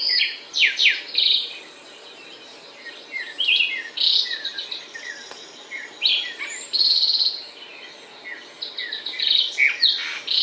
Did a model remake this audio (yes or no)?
no